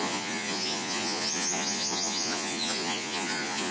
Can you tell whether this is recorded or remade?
remade